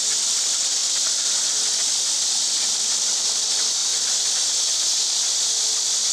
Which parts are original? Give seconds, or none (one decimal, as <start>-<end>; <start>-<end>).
0.0-6.1